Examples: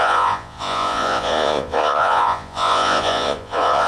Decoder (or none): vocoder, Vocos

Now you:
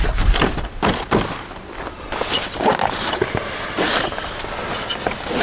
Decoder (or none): none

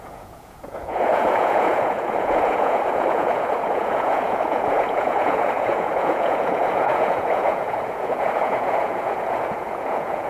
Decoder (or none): vocoder, Vocos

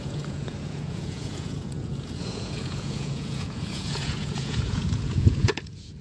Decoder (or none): vocoder, Vocos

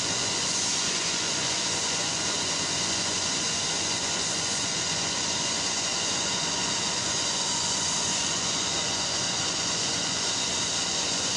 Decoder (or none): vocoder, Vocos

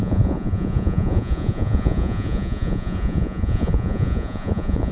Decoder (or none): vocoder, Vocos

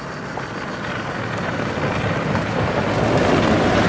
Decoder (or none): none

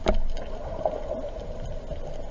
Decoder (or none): none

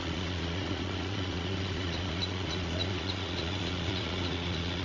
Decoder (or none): vocoder, Vocos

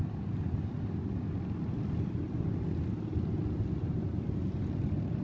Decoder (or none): none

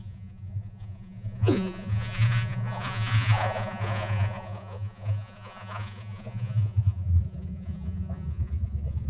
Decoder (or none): vocoder, Vocos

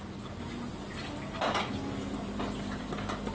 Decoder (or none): none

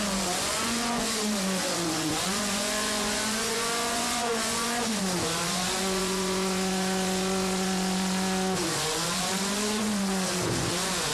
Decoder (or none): vocoder, Vocos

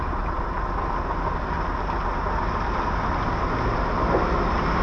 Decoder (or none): none